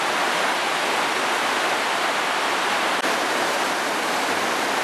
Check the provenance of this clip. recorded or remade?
recorded